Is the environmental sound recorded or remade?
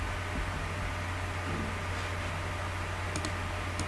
recorded